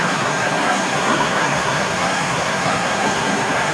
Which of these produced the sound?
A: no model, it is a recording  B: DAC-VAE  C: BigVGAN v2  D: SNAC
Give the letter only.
D